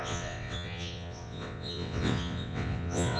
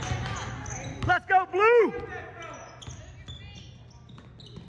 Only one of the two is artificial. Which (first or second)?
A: first